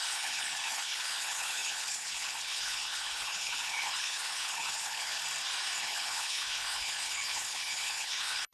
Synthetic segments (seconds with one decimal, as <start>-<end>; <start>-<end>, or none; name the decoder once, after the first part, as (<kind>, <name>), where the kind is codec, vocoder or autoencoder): 0.0-5.2 (codec, HILCodec); 5.8-8.5